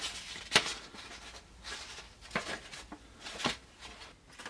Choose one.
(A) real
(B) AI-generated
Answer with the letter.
A